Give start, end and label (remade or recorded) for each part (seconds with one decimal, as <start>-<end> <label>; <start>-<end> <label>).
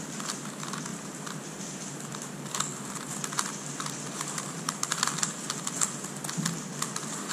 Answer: 0.0-0.9 recorded; 0.9-5.3 remade; 5.3-7.3 recorded